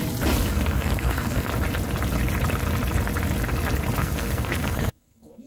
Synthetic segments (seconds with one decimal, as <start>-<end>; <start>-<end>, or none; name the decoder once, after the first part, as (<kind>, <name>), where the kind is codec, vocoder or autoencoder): 0.5-1.5 (codec, SNAC); 4.0-5.5